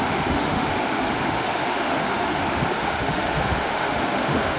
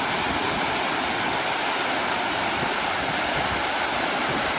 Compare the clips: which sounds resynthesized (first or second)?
first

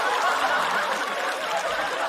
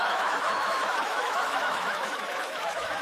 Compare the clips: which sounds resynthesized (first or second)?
second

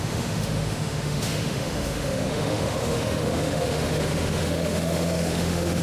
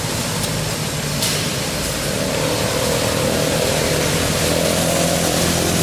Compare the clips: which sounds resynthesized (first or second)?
first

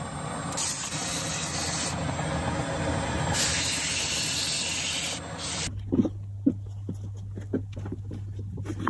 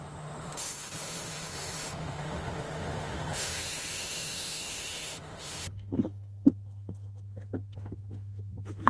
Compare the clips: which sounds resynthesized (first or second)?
second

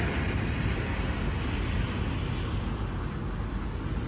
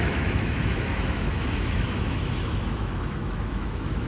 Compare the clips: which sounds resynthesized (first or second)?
second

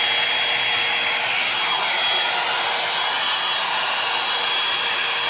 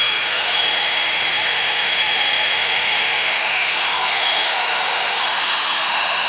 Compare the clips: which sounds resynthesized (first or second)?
second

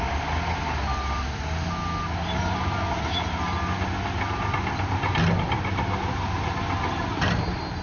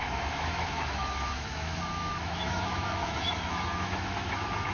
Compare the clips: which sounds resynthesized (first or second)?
second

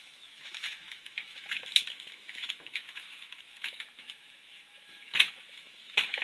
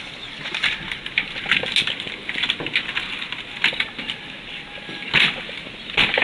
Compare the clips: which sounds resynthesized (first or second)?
first